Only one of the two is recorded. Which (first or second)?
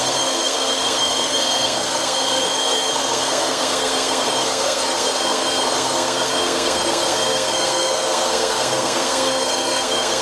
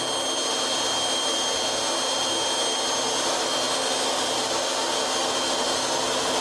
second